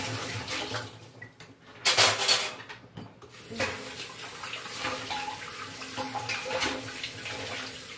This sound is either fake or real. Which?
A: real